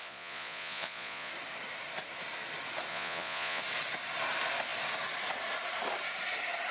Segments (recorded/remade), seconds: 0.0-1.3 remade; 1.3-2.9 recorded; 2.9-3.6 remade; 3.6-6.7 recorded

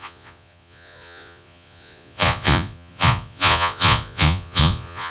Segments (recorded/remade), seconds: 0.0-5.1 remade

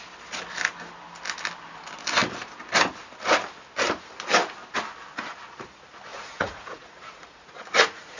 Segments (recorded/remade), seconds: 0.0-6.1 recorded; 6.1-8.2 remade

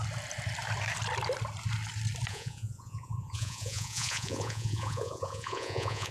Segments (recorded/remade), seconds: 0.0-2.3 recorded; 2.3-6.1 remade